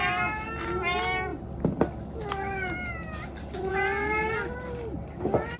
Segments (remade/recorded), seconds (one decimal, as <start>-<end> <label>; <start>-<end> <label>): 0.0-5.6 recorded